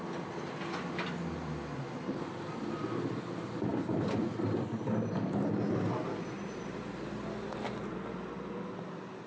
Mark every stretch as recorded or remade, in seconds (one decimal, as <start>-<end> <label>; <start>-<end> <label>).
0.0-9.3 recorded